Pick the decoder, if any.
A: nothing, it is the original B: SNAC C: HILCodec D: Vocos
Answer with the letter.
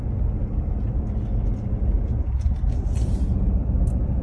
A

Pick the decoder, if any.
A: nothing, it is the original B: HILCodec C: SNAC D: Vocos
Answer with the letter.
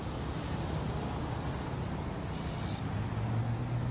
A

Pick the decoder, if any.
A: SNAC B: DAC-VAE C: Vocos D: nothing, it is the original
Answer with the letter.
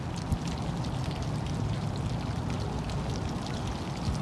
D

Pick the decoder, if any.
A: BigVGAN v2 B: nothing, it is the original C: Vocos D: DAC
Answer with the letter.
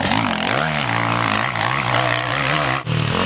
B